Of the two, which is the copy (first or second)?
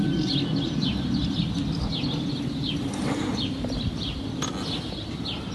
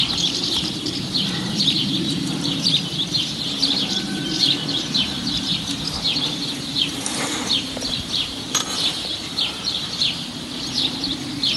second